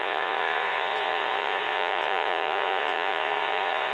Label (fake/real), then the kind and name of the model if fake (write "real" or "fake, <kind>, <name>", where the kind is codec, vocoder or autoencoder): fake, vocoder, Vocos